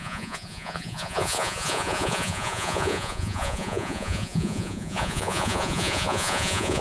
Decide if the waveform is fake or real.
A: fake